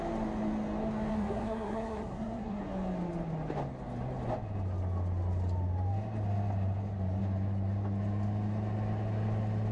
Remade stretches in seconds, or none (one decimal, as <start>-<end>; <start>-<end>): 1.1-2.6